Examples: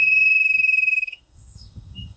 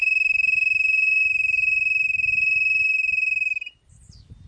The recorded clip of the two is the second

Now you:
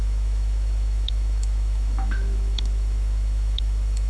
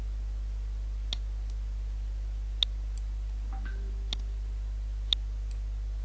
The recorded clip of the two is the second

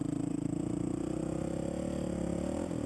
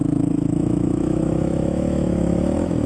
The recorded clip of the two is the first